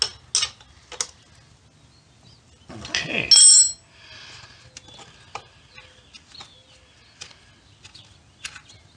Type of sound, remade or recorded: recorded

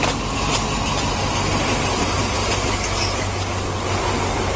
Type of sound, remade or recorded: recorded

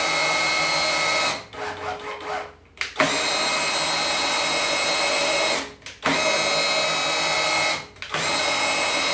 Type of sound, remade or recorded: recorded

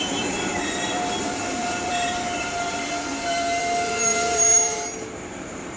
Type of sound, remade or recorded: remade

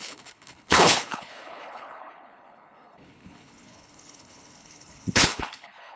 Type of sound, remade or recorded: remade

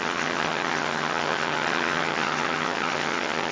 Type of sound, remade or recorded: remade